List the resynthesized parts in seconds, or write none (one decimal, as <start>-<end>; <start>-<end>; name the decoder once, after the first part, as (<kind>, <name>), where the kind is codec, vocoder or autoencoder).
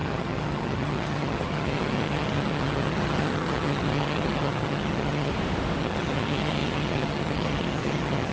0.0-5.3 (vocoder, HiFi-GAN); 5.8-8.3